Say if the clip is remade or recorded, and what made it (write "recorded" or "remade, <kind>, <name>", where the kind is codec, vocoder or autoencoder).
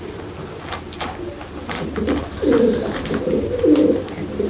recorded